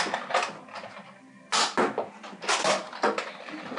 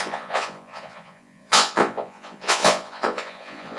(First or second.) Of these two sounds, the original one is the first